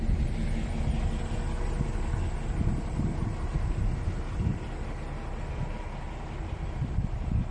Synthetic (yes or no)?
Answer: no